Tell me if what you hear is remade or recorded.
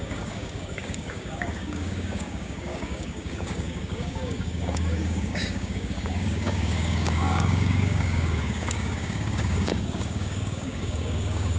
remade